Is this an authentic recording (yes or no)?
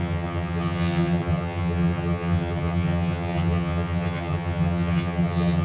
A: no